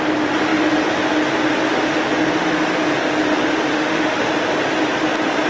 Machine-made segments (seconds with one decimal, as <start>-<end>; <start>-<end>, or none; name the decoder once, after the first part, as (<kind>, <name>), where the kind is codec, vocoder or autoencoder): 3.7-4.3 (autoencoder, DAC-VAE)